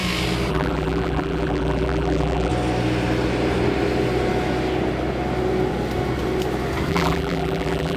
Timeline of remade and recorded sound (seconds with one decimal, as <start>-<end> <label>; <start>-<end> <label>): 0.0-0.5 recorded; 0.5-2.5 remade; 2.5-6.9 recorded; 6.9-8.0 remade